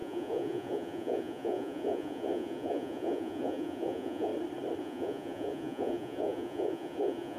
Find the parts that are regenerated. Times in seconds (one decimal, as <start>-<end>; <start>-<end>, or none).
0.0-4.3; 4.8-7.4